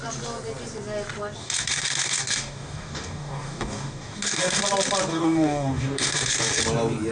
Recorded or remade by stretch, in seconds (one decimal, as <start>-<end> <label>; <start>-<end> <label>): 0.0-1.4 recorded; 1.4-4.6 remade; 4.6-5.1 recorded; 5.1-6.6 remade; 6.6-7.1 recorded